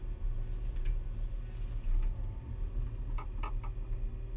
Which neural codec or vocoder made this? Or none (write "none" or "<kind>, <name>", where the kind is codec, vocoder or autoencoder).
none